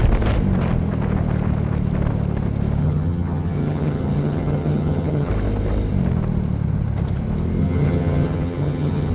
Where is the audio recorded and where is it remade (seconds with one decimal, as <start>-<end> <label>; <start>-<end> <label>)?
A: 0.0-2.8 recorded; 2.8-5.3 remade; 5.3-7.6 recorded; 7.6-9.1 remade